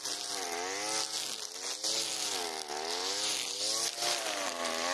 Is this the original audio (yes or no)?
yes